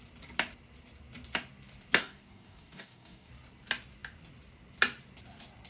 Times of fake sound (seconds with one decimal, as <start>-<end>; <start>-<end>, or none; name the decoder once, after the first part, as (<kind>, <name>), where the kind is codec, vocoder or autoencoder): 2.0-3.3 (codec, DAC)